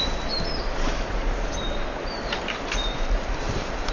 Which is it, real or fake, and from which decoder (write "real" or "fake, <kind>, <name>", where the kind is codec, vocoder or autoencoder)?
fake, vocoder, BigVGAN v2